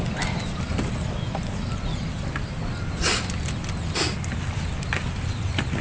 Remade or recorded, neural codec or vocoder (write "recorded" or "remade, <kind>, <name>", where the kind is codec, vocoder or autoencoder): recorded